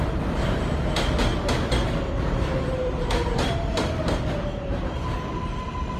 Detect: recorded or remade recorded